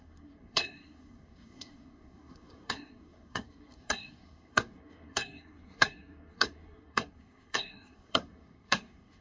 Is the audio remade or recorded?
remade